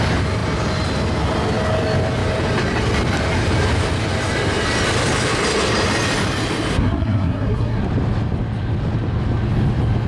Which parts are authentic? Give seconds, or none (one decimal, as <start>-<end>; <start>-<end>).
0.0-6.7; 7.8-10.1